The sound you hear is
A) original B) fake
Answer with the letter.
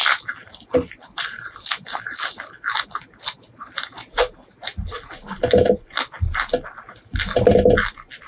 A